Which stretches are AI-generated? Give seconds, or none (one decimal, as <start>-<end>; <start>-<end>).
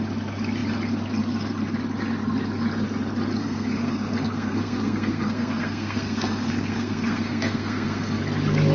3.4-8.2